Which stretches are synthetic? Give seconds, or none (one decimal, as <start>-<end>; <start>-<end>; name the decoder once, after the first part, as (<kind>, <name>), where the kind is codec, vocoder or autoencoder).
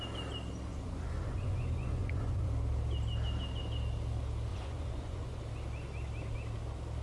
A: 0.7-2.5 (vocoder, Vocos); 4.5-5.4